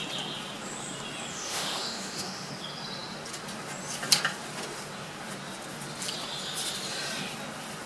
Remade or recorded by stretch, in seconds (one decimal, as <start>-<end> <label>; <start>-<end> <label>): 0.0-1.3 recorded; 1.3-2.5 remade; 2.5-7.9 recorded